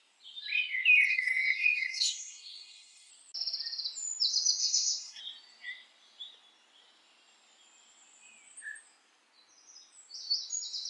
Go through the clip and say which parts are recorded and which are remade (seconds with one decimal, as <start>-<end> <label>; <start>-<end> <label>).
0.0-1.1 recorded; 1.1-3.1 remade; 3.1-4.6 recorded; 4.6-5.2 remade; 5.2-10.9 recorded